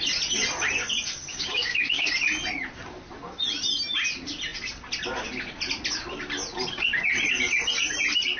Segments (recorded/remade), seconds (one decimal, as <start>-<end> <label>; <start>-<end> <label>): 0.0-1.3 recorded; 1.3-2.1 remade; 2.1-8.4 recorded